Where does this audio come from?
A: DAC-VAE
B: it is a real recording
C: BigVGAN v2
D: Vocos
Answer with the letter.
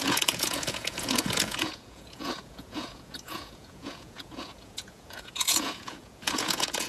D